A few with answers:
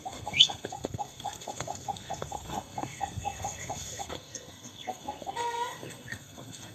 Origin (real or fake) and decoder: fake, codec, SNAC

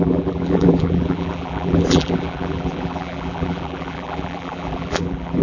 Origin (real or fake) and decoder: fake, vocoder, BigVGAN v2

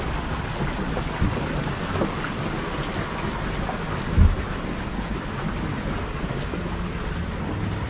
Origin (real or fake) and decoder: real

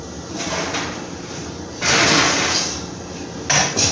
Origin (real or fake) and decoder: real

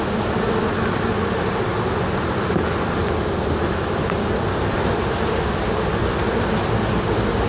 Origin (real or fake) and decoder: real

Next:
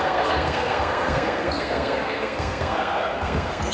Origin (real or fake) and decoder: fake, codec, SNAC